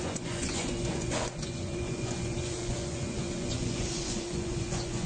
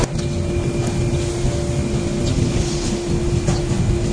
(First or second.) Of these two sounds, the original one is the second